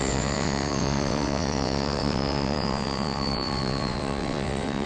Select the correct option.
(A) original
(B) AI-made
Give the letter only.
B